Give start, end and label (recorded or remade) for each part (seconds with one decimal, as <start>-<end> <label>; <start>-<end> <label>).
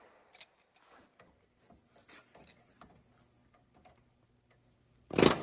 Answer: 0.0-5.4 recorded